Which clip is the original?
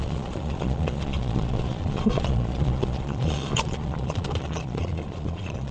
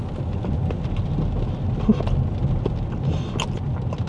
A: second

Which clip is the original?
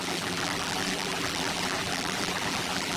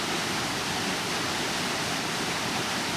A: second